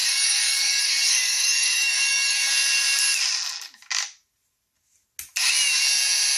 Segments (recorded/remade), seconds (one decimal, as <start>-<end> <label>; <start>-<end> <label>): 0.0-2.5 remade; 2.5-6.4 recorded